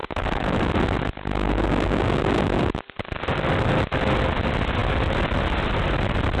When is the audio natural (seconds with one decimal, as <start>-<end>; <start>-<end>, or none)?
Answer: 0.7-6.4